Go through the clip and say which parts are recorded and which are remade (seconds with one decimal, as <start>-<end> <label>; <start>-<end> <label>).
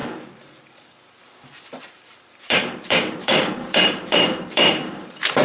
0.0-5.4 remade